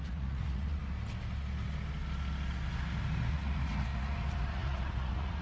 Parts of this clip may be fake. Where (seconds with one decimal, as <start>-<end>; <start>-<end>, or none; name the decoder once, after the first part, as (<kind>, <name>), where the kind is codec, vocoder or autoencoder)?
0.0-0.8 (vocoder, Vocos); 3.3-5.4